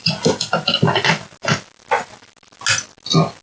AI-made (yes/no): no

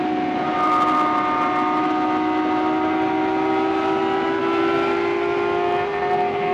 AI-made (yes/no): no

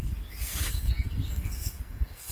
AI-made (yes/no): yes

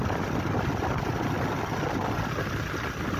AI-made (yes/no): no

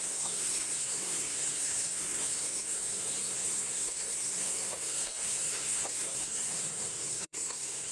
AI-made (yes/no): yes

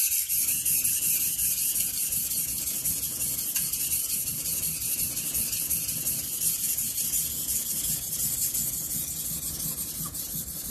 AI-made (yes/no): no